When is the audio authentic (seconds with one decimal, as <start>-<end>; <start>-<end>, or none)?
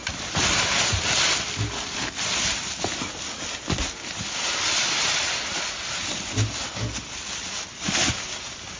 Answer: 2.6-8.8